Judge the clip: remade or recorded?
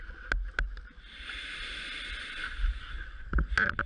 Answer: recorded